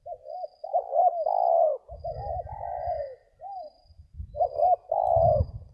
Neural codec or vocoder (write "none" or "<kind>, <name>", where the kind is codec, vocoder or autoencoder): none